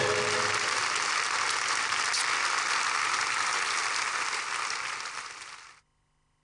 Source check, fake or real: real